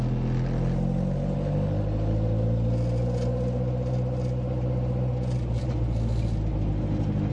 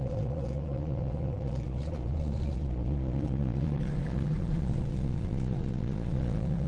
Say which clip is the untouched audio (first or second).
first